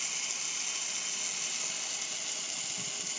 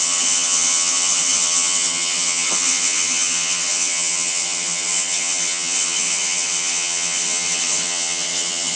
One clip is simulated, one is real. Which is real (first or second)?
first